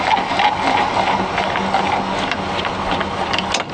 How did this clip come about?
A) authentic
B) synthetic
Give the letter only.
A